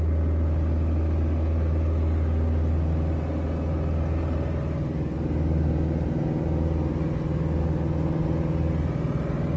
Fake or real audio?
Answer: real